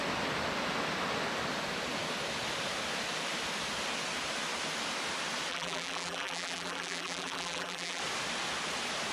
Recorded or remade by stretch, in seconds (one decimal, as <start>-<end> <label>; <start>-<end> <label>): 0.0-5.5 recorded; 5.5-8.0 remade; 8.0-9.1 recorded